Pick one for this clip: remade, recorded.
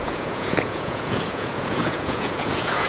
remade